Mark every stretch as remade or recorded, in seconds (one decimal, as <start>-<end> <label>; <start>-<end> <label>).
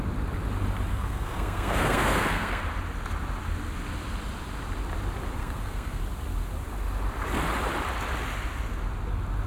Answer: 0.0-0.9 recorded; 0.9-2.6 remade; 2.6-5.4 recorded; 5.4-6.0 remade; 6.0-9.5 recorded